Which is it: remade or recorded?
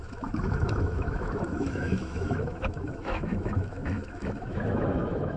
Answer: remade